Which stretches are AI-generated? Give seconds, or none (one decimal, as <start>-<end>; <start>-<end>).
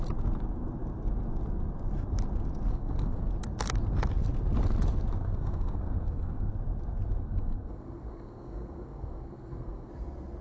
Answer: 2.7-3.3; 5.2-6.5; 7.2-9.9